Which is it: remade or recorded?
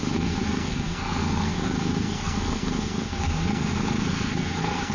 remade